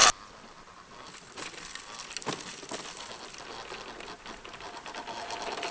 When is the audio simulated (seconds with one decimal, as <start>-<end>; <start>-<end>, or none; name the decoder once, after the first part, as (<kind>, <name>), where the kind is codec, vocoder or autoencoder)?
none